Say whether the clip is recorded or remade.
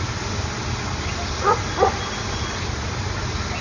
recorded